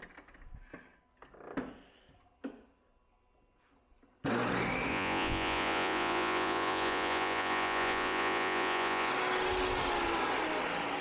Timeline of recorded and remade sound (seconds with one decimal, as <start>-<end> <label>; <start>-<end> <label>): 0.0-4.9 recorded; 4.9-9.1 remade; 9.1-11.0 recorded